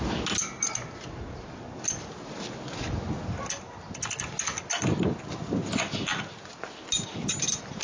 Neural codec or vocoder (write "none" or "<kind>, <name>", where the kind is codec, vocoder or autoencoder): none